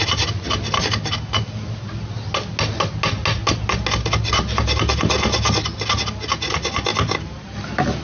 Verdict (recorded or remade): recorded